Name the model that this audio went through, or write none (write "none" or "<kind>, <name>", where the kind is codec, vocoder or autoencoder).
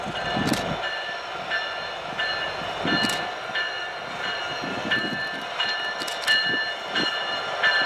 none